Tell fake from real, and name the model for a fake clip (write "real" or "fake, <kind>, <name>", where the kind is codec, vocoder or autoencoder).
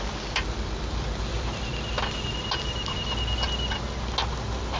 real